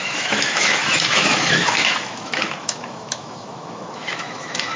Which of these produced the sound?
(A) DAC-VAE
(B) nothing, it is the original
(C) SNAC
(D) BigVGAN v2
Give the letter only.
A